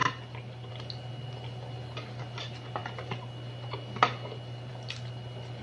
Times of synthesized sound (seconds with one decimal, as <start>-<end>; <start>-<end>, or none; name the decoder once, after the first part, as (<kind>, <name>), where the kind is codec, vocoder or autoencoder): none